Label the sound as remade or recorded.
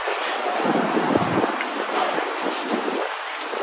recorded